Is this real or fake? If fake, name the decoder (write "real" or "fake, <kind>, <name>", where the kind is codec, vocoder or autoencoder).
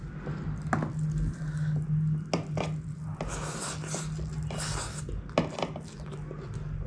real